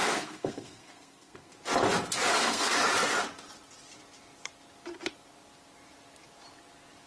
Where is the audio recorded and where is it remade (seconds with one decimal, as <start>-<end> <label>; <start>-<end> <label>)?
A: 0.0-1.5 remade; 1.5-2.3 recorded; 2.3-2.8 remade; 2.8-7.1 recorded